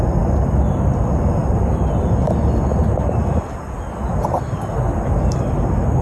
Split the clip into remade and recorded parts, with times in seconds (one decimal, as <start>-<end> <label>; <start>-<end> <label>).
0.0-6.0 recorded